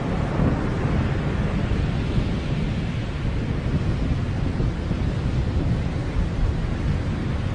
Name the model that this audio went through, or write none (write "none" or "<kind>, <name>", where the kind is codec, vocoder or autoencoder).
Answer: none